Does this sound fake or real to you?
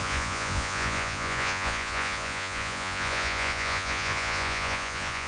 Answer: fake